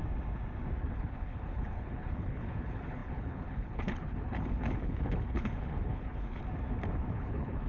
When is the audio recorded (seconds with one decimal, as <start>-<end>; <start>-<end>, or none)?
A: 0.0-0.8; 6.4-7.1